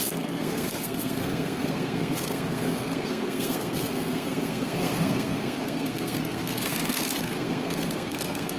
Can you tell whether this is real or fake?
fake